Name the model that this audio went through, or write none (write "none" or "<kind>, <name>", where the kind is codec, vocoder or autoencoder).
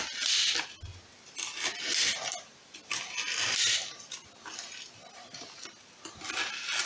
none